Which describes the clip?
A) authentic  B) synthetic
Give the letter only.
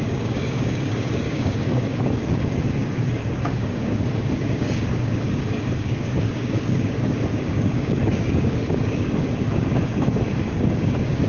B